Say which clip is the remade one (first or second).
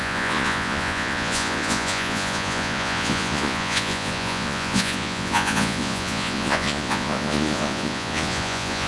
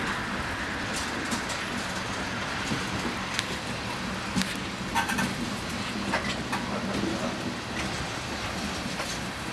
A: first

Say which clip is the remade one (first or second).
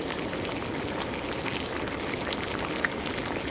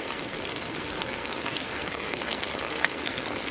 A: second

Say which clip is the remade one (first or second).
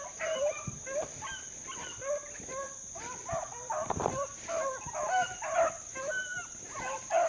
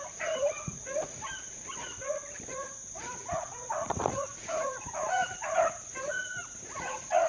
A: second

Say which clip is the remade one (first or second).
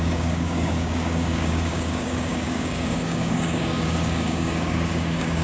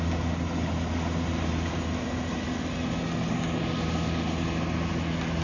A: first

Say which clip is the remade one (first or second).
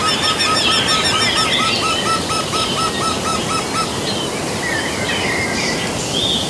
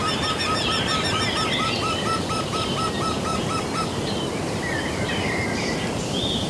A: second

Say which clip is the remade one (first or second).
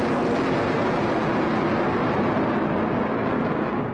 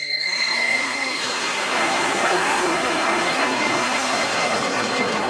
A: second